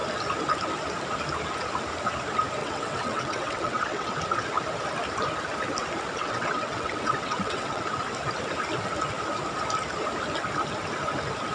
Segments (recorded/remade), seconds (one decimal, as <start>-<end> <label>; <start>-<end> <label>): 0.0-2.6 recorded; 2.6-4.2 remade; 4.2-6.2 recorded; 6.2-7.9 remade; 7.9-11.5 recorded